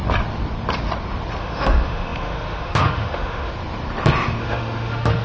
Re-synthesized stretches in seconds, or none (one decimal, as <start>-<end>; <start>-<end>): 1.4-3.5; 4.4-5.2